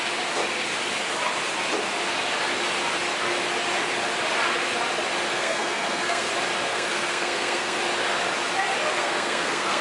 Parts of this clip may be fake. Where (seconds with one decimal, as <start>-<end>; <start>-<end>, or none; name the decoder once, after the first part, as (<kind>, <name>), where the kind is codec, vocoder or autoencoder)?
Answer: 5.3-6.3 (codec, SNAC); 6.7-7.8; 8.9-9.8